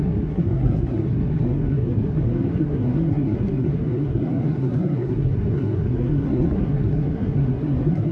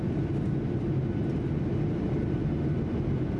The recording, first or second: second